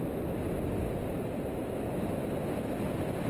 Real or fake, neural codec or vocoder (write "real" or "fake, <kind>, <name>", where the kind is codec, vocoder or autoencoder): real